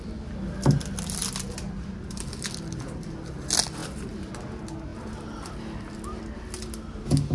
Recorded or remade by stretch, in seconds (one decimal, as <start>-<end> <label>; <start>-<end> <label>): 0.0-4.9 recorded; 4.9-5.5 remade; 5.5-7.3 recorded